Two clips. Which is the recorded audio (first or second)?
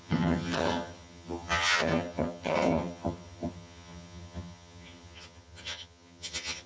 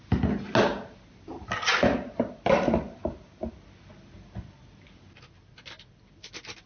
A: second